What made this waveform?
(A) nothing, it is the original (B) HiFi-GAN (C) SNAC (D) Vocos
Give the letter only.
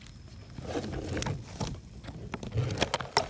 A